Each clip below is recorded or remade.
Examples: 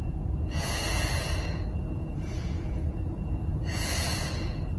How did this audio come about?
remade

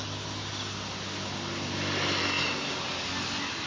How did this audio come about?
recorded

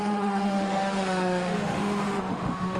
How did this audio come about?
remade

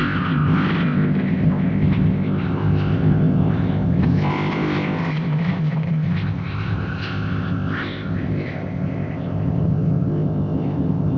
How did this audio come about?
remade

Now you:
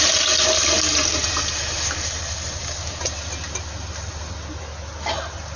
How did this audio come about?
recorded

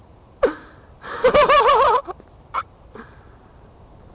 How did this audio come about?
remade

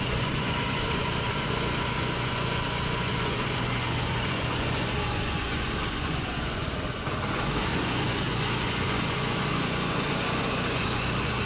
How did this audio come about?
remade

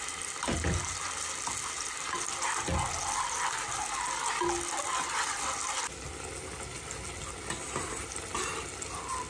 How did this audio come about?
recorded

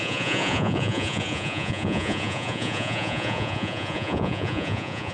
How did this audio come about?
remade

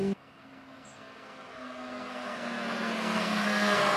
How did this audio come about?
remade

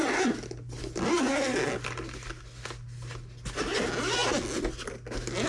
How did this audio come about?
recorded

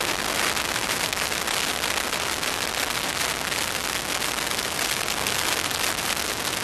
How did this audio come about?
recorded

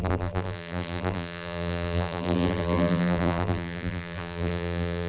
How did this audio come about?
remade